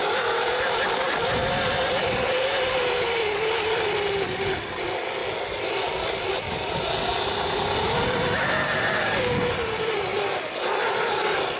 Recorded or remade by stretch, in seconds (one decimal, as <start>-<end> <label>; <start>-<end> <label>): 0.0-4.8 remade; 4.8-11.6 recorded